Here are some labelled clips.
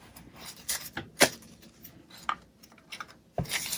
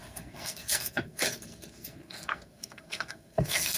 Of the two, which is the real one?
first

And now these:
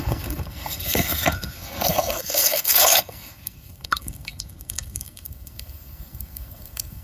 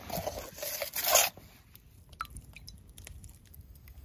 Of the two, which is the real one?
second